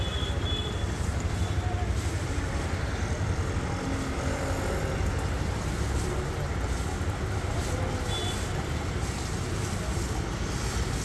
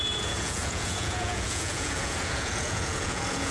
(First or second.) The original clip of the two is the first